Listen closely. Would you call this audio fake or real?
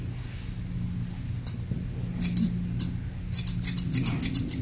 real